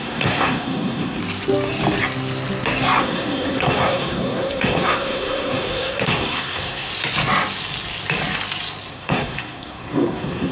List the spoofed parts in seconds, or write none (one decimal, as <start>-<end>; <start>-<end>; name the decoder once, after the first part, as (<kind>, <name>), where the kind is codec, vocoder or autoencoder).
0.0-1.2 (codec, SNAC); 3.0-6.9; 8.9-10.5